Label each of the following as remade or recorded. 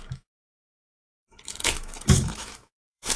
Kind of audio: remade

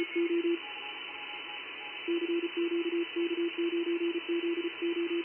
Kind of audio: recorded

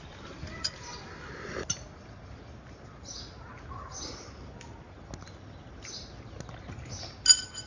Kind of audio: recorded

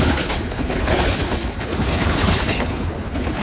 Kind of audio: remade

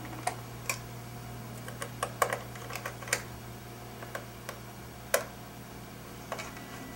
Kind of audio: recorded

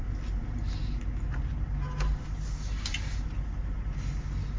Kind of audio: recorded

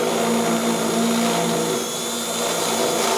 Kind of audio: recorded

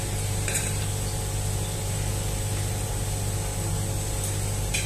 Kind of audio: recorded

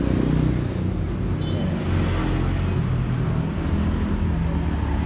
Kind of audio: recorded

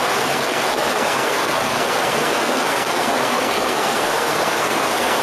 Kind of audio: remade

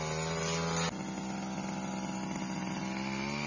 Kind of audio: recorded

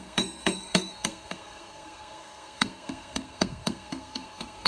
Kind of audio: remade